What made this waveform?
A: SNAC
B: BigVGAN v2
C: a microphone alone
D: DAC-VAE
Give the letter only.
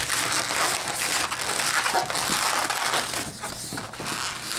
C